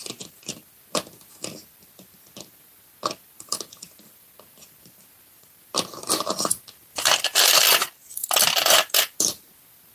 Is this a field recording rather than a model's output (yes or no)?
yes